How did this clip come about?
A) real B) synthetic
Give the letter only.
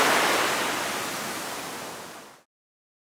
A